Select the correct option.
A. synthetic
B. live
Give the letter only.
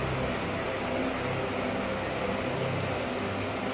B